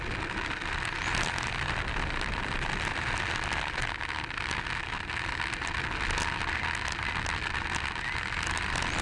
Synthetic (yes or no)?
no